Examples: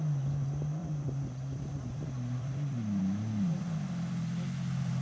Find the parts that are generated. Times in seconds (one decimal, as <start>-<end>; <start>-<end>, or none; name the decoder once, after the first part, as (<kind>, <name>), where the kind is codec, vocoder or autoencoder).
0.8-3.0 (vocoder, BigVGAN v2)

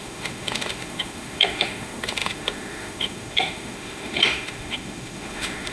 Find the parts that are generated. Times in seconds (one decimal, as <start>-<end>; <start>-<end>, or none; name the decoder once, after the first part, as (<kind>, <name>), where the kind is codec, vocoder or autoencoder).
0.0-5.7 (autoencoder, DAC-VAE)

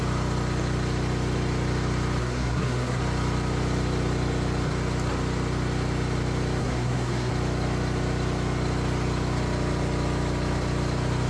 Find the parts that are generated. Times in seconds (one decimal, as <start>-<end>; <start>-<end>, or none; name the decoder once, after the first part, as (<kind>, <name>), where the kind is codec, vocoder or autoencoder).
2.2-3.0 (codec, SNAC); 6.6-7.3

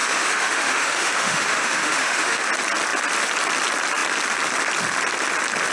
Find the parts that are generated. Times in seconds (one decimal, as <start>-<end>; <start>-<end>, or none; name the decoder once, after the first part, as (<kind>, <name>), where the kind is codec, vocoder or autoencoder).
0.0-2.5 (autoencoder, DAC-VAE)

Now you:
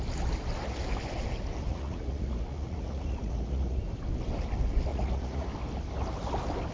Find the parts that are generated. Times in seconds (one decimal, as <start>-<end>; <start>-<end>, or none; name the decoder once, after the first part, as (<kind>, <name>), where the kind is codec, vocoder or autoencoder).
1.7-3.8 (vocoder, Vocos); 4.9-5.5